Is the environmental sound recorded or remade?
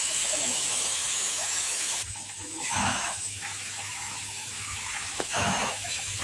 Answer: remade